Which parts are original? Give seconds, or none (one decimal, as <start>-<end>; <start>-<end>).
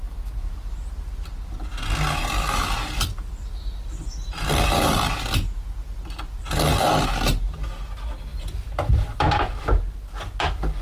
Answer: 0.0-10.8